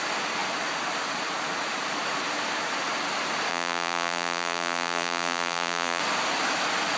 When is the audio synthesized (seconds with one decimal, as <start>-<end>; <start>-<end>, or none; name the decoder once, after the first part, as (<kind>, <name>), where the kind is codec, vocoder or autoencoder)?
3.5-6.0 (vocoder, BigVGAN v2)